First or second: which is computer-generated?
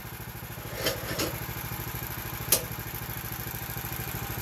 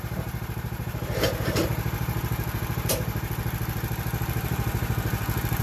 second